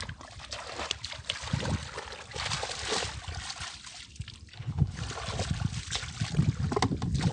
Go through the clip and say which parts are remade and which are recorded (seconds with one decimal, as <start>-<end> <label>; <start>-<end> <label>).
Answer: 0.0-4.5 recorded; 4.5-5.0 remade; 5.0-7.3 recorded